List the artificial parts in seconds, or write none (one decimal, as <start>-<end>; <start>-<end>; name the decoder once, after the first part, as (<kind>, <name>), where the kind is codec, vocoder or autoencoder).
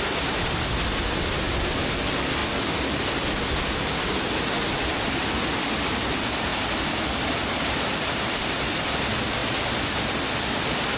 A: 6.5-8.5 (vocoder, BigVGAN v2); 9.4-10.4